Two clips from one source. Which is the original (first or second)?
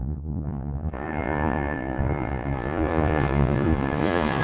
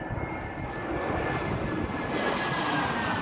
second